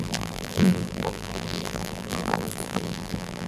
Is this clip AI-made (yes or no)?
yes